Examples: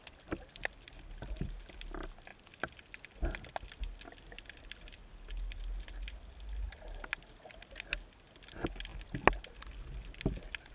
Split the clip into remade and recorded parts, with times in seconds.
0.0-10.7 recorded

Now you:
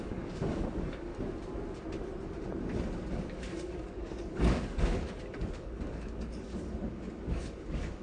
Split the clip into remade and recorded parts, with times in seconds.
0.0-1.1 remade; 1.1-3.3 recorded; 3.3-8.0 remade

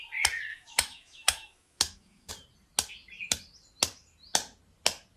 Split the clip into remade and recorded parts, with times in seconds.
0.0-0.5 recorded; 0.5-2.3 remade; 2.3-5.2 recorded

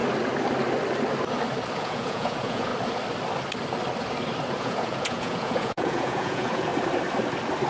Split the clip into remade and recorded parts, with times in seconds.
0.0-1.8 recorded; 1.8-2.7 remade; 2.7-4.6 recorded; 4.6-6.7 remade; 6.7-7.7 recorded